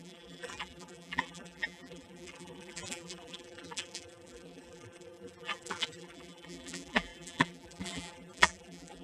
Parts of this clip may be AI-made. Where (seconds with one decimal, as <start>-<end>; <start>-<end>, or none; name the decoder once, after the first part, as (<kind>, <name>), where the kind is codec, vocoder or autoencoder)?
0.0-9.0 (vocoder, BigVGAN v2)